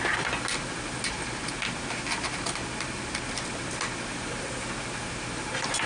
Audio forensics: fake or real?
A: real